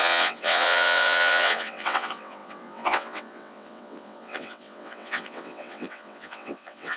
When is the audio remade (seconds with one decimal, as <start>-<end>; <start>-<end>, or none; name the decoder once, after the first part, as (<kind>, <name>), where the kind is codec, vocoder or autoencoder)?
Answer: 0.0-7.0 (vocoder, WaveNeXt)